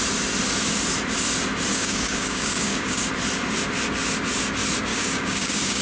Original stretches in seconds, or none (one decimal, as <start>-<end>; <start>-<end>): 0.0-1.7; 3.0-4.9